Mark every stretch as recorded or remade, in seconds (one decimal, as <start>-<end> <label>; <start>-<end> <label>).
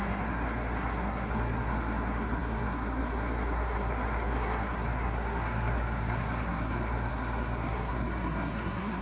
0.0-9.0 remade